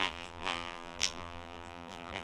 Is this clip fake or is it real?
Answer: fake